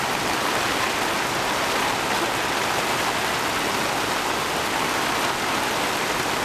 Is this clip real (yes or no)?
yes